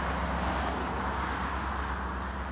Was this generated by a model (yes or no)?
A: no